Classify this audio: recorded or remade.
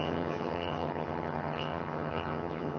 remade